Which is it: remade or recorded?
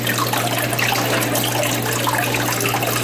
recorded